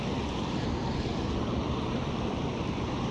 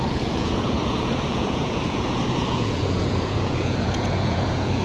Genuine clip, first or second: first